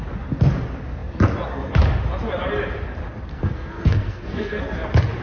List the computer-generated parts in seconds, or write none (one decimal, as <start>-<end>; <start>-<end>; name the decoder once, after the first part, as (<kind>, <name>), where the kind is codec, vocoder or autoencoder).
3.3-4.6 (codec, SNAC)